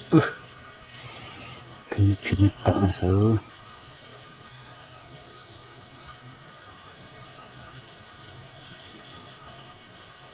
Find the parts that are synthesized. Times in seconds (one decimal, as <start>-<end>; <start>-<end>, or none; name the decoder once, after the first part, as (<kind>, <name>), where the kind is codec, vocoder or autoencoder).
0.0-1.0 (codec, SNAC); 1.6-2.9; 3.5-10.3